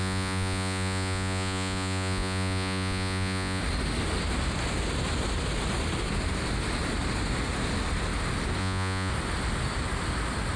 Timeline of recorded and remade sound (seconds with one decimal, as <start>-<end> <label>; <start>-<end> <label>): 0.0-3.6 remade; 3.6-8.6 recorded; 8.6-9.1 remade; 9.1-10.6 recorded